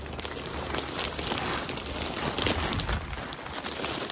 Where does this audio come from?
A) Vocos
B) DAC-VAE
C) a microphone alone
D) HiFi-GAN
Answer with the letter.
C